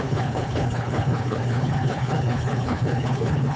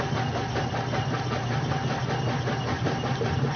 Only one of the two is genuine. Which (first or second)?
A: second